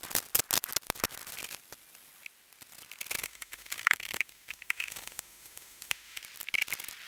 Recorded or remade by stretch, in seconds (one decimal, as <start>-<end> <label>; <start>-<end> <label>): 0.0-3.2 recorded; 3.2-6.2 remade; 6.2-7.1 recorded

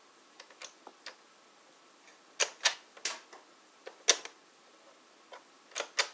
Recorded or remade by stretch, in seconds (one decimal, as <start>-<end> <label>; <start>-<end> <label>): 0.0-6.1 recorded

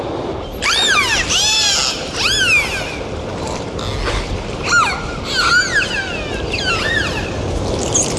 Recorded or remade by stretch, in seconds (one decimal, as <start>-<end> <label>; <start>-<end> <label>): 0.0-8.2 recorded

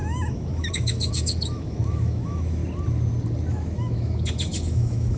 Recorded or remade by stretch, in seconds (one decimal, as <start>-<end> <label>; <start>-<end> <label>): 0.0-2.6 remade; 2.6-3.5 recorded; 3.5-5.2 remade

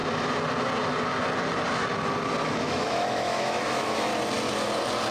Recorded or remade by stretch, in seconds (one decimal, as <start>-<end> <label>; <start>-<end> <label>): 0.0-2.6 recorded; 2.6-4.1 remade; 4.1-5.1 recorded

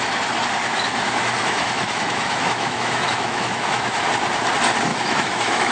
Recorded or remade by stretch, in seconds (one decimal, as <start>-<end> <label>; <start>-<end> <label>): 0.0-0.6 recorded; 0.6-4.0 remade; 4.0-4.9 recorded; 4.9-5.7 remade